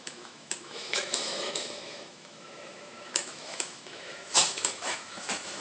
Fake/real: fake